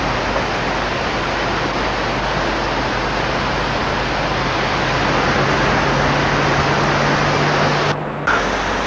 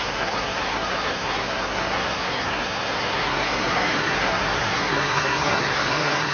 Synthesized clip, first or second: second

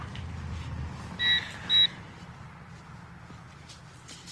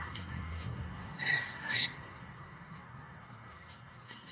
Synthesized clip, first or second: second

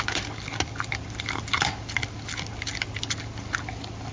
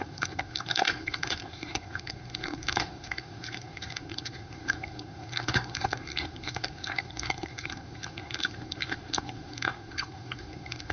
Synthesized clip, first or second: second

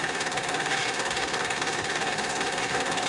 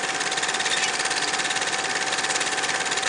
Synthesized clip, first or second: first